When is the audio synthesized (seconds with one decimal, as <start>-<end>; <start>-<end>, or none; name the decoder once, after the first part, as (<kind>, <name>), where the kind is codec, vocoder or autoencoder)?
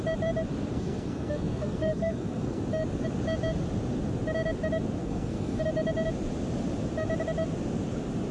0.7-2.6 (codec, SNAC); 5.0-5.6